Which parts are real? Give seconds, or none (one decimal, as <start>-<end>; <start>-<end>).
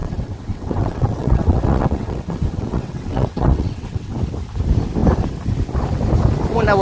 4.1-6.8